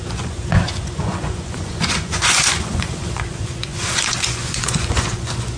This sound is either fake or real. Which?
fake